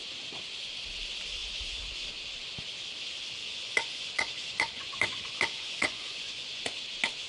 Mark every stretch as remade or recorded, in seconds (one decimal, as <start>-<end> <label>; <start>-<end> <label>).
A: 0.0-3.4 recorded; 3.4-6.8 remade; 6.8-7.3 recorded